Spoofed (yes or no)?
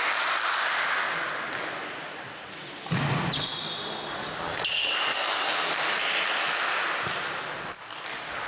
no